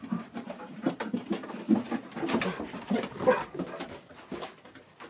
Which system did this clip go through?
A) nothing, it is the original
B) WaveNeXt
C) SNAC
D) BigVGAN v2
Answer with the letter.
A